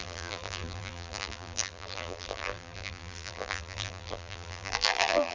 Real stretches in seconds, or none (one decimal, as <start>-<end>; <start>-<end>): none